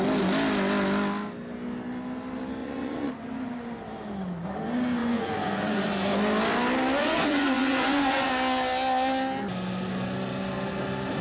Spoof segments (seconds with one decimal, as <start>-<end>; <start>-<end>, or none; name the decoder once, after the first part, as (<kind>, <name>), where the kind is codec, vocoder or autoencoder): 2.6-3.1 (vocoder, Vocos); 5.0-5.9; 7.0-8.3